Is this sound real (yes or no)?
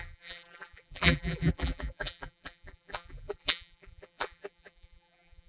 no